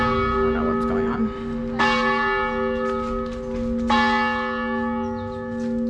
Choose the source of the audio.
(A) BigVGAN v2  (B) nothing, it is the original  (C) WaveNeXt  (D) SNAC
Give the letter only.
B